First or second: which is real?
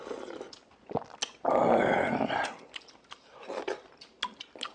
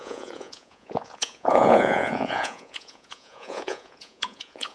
first